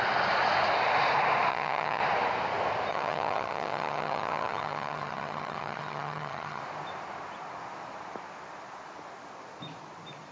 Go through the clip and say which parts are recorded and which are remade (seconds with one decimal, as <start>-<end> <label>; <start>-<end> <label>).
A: 0.0-1.5 recorded; 1.5-2.0 remade; 2.0-2.9 recorded; 2.9-6.6 remade; 6.6-10.3 recorded